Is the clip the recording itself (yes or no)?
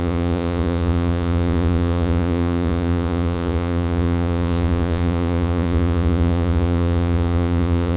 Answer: no